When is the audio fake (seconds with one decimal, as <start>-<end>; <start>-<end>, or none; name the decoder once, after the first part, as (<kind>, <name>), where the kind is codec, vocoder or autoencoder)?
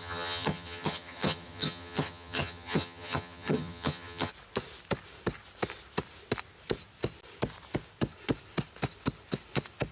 0.0-4.3 (vocoder, HiFi-GAN)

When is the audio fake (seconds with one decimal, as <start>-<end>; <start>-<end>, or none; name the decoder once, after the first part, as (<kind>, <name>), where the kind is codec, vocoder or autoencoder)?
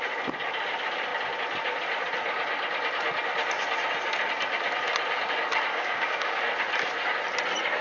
5.7-6.4 (codec, DAC)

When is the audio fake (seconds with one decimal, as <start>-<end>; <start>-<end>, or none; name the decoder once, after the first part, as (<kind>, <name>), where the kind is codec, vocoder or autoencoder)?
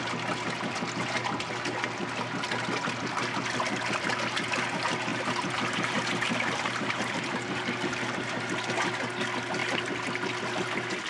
5.1-8.5 (vocoder, BigVGAN v2)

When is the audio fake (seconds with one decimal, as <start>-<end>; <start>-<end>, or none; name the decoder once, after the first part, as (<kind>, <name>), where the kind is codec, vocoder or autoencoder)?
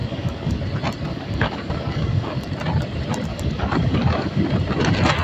0.0-0.6 (codec, DAC); 1.1-2.5; 3.3-4.4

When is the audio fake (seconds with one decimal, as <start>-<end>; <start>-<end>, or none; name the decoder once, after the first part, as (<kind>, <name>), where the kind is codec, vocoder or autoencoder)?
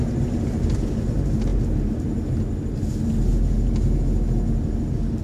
none